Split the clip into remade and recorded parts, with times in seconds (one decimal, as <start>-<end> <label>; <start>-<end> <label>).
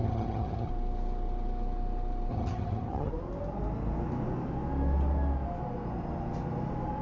0.0-0.7 remade; 0.7-2.3 recorded; 2.3-3.1 remade; 3.1-7.0 recorded